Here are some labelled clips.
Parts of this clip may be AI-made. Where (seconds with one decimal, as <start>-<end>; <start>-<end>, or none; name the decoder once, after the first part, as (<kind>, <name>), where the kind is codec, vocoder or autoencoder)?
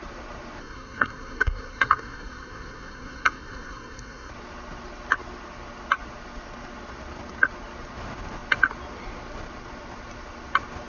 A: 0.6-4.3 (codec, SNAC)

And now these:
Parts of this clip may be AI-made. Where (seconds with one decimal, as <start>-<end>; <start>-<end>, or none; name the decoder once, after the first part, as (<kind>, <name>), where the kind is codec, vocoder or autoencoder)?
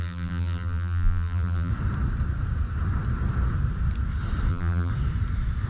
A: 0.0-1.7 (vocoder, BigVGAN v2); 4.5-4.9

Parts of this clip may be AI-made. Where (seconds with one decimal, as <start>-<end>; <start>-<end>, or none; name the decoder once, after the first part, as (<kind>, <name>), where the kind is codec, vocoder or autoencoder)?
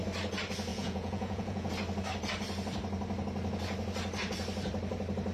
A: 0.7-1.7 (vocoder, Vocos)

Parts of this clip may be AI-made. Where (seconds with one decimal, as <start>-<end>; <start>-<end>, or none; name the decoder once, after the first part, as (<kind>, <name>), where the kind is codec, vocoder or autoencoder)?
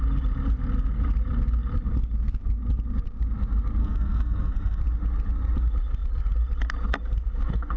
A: 3.8-4.8 (codec, SNAC)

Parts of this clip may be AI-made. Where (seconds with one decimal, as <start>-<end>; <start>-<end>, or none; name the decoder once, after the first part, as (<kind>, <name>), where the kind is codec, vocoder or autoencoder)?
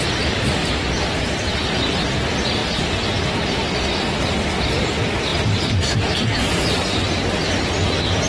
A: 0.6-1.1 (vocoder, BigVGAN v2); 5.3-6.5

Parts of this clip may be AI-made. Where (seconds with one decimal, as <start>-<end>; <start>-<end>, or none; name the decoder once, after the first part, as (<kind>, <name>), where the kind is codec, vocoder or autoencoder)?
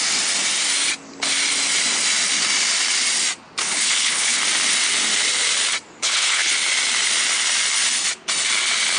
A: 3.6-4.4 (codec, HILCodec); 6.0-6.5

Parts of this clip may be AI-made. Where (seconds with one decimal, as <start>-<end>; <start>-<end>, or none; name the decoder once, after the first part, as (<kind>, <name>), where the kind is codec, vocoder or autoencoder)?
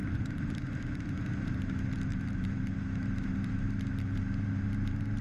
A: 0.0-0.6 (vocoder, BigVGAN v2); 2.1-5.2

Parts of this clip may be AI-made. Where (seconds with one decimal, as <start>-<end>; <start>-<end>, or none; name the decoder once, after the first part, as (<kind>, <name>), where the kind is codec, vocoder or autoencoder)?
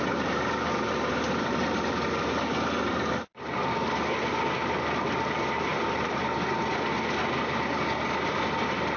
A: none